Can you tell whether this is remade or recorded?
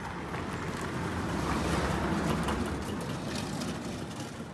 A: recorded